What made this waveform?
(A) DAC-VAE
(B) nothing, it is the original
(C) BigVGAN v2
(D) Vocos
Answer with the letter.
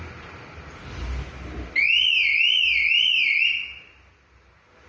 B